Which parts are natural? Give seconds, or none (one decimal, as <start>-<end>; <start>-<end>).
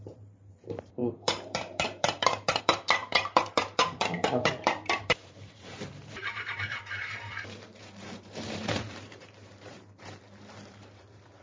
none